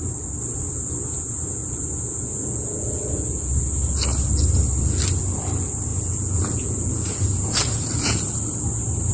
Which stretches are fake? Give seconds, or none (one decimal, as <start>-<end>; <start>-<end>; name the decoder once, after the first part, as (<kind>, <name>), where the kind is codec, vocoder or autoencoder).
1.6-3.5 (vocoder, Vocos); 5.9-8.3